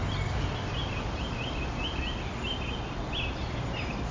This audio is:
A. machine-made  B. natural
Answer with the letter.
B